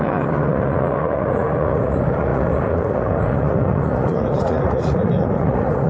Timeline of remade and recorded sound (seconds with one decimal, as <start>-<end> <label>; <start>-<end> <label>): 0.0-5.9 remade